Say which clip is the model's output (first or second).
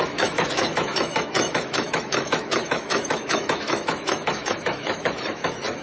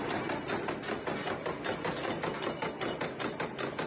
first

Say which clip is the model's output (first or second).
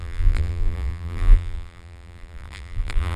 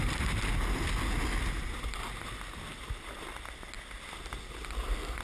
first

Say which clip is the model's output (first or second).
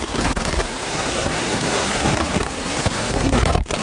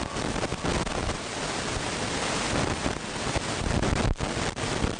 first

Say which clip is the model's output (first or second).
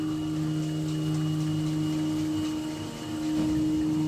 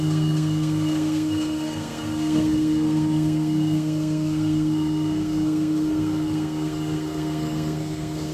second